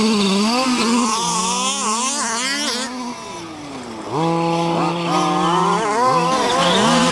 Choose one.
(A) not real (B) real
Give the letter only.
B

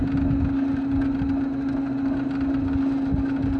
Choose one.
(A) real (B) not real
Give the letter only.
A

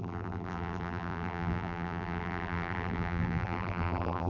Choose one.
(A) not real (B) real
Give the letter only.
A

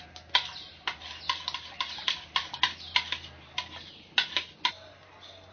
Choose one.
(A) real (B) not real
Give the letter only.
A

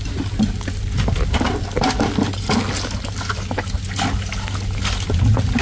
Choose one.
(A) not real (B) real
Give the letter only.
B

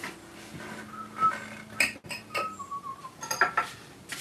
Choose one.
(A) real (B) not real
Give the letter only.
A